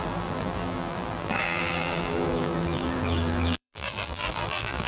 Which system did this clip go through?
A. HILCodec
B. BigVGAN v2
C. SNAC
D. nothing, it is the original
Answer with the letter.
B